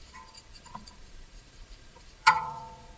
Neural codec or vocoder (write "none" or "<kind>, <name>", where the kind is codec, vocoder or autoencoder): vocoder, Vocos